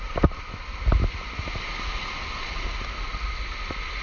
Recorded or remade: recorded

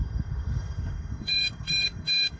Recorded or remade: remade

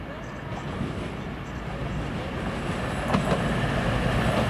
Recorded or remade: recorded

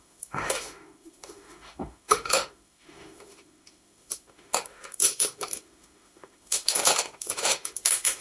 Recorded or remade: remade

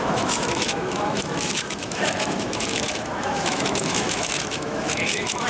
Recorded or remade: remade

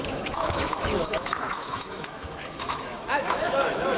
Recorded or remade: remade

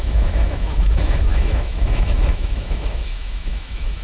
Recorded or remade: remade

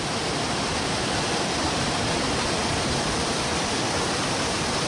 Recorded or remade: recorded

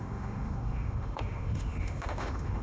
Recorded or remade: remade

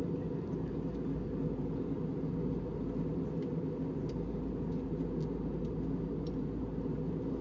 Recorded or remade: recorded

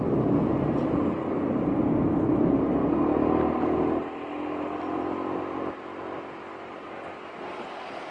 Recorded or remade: recorded